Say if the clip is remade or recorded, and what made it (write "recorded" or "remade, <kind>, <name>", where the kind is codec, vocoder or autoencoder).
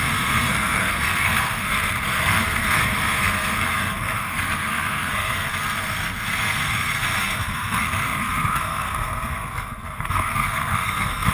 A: remade, codec, SNAC